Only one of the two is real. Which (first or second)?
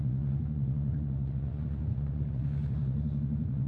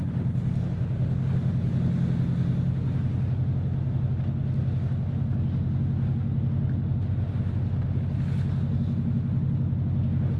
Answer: second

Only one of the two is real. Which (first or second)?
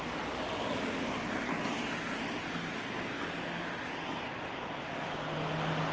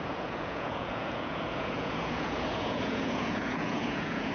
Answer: first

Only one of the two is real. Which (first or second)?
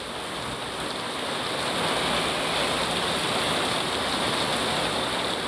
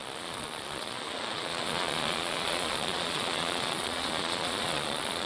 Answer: first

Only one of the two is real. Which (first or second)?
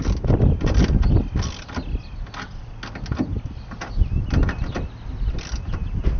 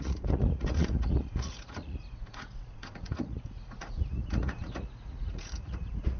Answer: first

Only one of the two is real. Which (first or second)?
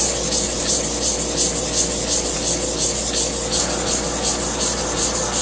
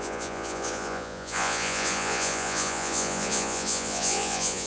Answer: first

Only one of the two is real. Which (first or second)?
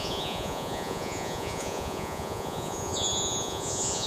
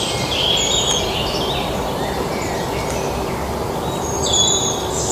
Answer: second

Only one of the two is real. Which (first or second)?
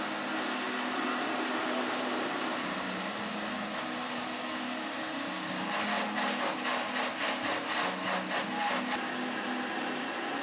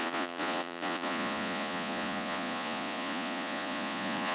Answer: first